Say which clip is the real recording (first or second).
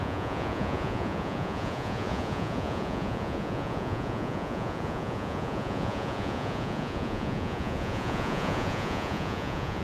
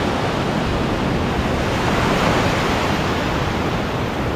second